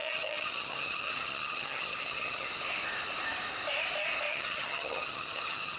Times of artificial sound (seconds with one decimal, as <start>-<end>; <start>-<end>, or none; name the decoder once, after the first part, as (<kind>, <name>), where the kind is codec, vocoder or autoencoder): 0.0-2.5 (vocoder, HiFi-GAN); 4.3-5.8